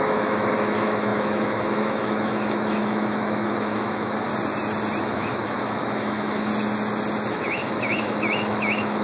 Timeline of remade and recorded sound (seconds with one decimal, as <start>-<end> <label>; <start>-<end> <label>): 0.0-4.3 remade; 4.3-5.0 recorded; 5.0-6.5 remade; 6.5-7.3 recorded; 7.3-9.0 remade